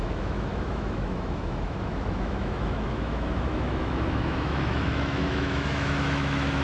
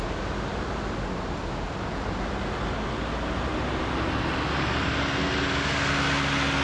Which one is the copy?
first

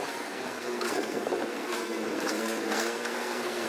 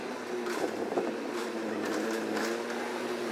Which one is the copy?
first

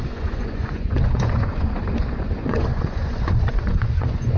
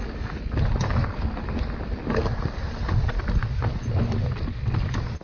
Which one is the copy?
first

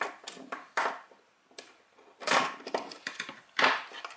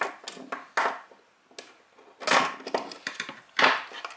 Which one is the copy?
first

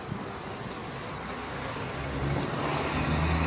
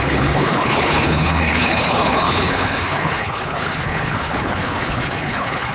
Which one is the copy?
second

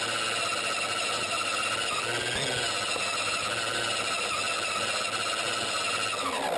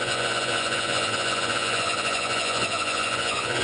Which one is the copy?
second